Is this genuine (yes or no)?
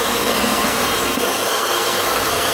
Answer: no